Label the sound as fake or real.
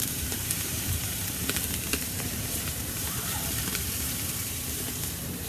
fake